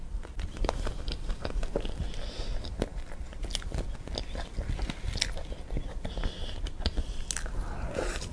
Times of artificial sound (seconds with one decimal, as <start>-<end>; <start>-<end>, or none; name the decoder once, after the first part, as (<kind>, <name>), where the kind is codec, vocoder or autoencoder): none